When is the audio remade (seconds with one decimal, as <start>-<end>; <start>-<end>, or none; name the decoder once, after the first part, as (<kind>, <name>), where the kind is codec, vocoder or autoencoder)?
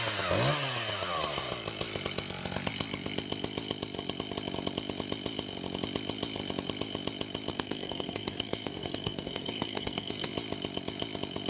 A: 7.5-10.3 (codec, SNAC)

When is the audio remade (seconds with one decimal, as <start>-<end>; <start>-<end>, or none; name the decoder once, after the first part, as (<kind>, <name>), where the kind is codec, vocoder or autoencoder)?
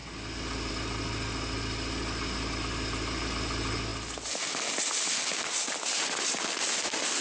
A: none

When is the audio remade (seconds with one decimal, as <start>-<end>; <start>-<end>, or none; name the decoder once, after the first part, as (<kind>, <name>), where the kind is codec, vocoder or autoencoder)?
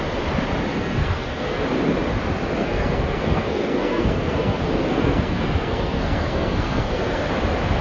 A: 0.7-1.6 (codec, SNAC); 2.6-7.3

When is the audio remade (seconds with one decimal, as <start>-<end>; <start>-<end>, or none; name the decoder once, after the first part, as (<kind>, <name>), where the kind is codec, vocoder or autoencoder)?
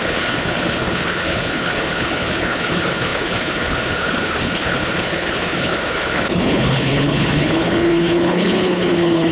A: 0.0-9.3 (codec, HILCodec)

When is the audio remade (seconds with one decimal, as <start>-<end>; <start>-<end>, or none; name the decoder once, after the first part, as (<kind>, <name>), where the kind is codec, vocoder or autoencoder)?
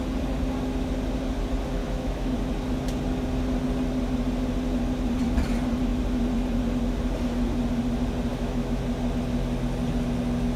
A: 1.8-2.4 (autoencoder, DAC-VAE); 8.3-8.8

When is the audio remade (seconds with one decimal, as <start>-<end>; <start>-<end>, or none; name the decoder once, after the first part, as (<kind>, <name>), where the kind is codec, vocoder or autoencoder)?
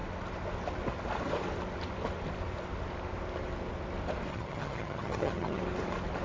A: 4.3-5.6 (vocoder, HiFi-GAN)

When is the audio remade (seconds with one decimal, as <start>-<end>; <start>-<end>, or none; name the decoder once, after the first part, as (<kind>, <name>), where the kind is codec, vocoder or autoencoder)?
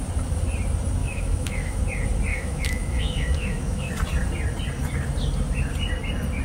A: 1.0-1.8 (autoencoder, DAC-VAE); 2.3-3.9